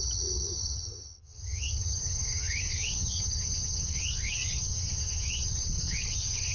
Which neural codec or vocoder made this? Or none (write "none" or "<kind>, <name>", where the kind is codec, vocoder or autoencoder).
vocoder, HiFi-GAN